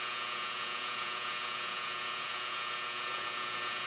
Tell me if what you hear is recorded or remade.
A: remade